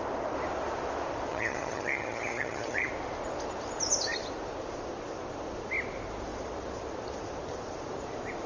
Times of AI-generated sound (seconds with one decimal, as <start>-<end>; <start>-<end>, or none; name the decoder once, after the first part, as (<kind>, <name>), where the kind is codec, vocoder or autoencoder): 1.3-2.9 (vocoder, HiFi-GAN)